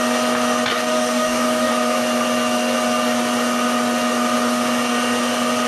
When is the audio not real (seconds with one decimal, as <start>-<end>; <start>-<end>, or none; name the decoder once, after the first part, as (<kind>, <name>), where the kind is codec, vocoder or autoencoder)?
0.7-1.7 (codec, DAC)

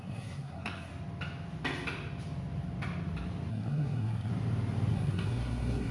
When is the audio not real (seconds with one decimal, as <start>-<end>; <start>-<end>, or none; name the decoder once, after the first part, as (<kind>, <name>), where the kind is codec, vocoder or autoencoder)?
0.0-0.9 (codec, SNAC); 3.5-4.3; 4.9-5.9

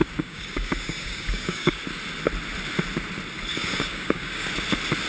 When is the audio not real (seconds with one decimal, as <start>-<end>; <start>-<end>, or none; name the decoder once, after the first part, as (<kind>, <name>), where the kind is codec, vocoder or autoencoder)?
0.0-1.8 (codec, DAC); 3.5-4.5

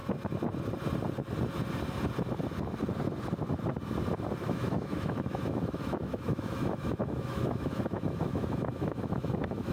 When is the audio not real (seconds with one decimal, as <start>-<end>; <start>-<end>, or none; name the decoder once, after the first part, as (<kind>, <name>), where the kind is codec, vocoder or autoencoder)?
4.4-9.7 (autoencoder, DAC-VAE)